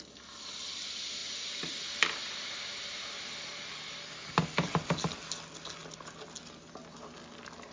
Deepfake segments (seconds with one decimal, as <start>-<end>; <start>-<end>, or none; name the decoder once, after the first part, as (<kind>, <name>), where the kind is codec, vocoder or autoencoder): none